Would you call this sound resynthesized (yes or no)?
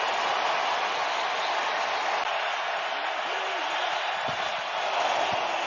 no